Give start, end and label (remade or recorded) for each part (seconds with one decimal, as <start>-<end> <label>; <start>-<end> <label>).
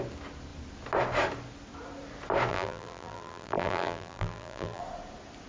0.0-2.5 recorded; 2.5-4.8 remade; 4.8-5.5 recorded